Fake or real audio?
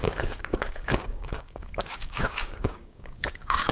fake